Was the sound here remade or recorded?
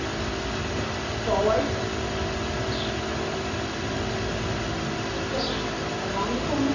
recorded